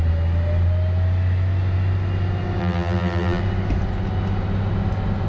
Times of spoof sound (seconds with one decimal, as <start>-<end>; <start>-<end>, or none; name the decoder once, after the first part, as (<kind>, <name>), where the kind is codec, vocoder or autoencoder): 2.6-3.4 (vocoder, BigVGAN v2)